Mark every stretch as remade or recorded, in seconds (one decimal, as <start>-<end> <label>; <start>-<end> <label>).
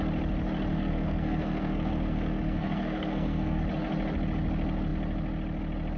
0.0-0.7 recorded; 0.7-3.6 remade; 3.6-6.0 recorded